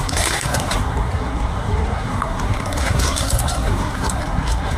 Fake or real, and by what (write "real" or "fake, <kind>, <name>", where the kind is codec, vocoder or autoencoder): fake, codec, SNAC